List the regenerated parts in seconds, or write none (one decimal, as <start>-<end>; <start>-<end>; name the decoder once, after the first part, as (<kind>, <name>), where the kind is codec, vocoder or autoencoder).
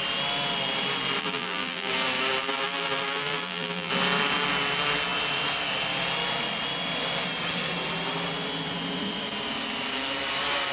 1.2-1.9 (vocoder, BigVGAN v2); 2.4-3.9